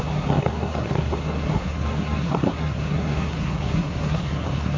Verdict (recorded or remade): remade